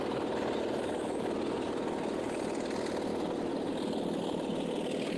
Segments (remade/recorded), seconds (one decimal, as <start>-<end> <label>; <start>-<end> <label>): 0.0-5.2 recorded